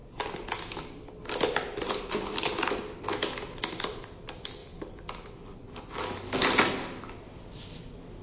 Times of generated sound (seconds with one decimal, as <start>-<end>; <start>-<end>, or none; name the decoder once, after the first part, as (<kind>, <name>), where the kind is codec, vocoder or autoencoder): 0.0-1.1 (vocoder, BigVGAN v2); 4.6-5.9